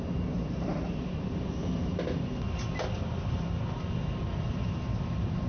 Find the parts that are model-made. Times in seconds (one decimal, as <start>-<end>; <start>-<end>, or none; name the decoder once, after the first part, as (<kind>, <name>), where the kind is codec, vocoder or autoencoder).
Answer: none